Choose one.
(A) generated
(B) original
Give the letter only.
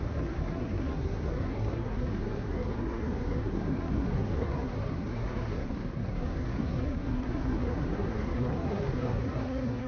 A